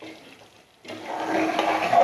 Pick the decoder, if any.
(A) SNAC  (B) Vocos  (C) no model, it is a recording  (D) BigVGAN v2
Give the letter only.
C